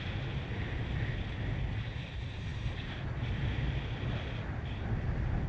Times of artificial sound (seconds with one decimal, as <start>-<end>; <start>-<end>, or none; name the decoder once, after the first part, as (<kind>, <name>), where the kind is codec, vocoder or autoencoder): none